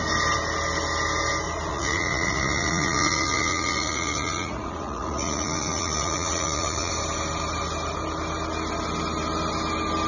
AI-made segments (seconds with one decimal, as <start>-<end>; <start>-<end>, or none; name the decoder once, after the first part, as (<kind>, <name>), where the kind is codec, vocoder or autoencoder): 1.7-6.9 (vocoder, Vocos)